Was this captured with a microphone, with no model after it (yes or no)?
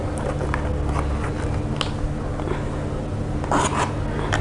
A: yes